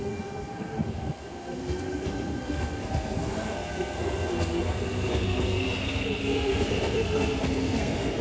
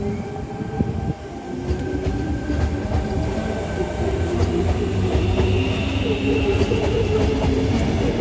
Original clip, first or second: second